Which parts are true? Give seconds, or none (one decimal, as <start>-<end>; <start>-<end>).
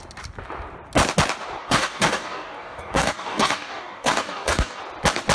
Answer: 0.0-1.6; 4.8-5.3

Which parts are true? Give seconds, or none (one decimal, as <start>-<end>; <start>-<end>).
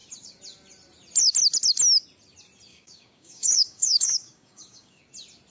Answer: 0.0-2.7; 5.1-5.5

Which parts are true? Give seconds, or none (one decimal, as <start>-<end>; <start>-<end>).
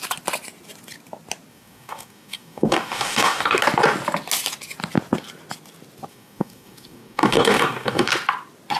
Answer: 0.0-1.5; 3.6-6.1; 8.1-8.8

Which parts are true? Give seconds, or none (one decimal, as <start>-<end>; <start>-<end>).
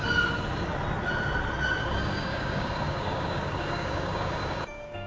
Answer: 0.0-1.8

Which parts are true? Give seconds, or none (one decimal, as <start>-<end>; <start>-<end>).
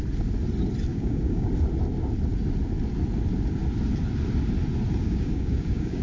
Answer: 0.0-0.9; 1.5-5.0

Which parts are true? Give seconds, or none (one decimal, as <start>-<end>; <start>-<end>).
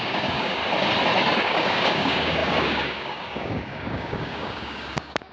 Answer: 0.6-1.4